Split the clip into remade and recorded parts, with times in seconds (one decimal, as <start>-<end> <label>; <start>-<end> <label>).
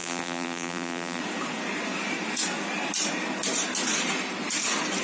0.0-1.2 remade; 1.2-5.0 recorded